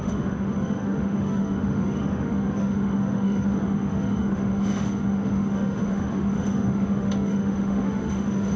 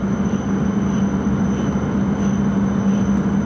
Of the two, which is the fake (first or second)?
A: first